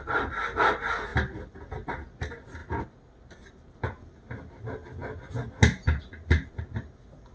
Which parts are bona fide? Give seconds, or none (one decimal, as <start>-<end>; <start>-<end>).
2.6-3.8; 5.0-6.0